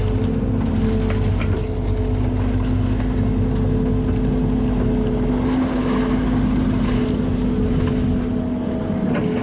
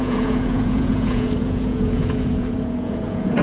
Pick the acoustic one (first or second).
first